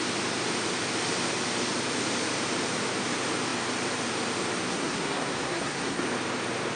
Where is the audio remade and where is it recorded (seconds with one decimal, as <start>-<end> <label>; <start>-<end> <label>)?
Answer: 0.0-4.7 recorded; 4.7-6.0 remade; 6.0-6.8 recorded